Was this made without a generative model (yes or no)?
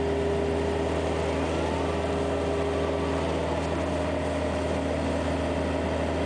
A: yes